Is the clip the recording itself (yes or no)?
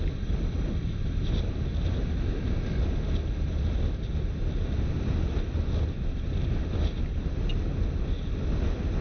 yes